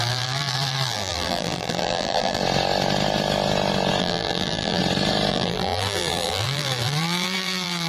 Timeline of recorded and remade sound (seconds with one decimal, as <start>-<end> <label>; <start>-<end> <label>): 0.0-2.4 remade; 2.4-4.0 recorded; 4.0-4.8 remade; 4.8-5.3 recorded; 5.3-7.9 remade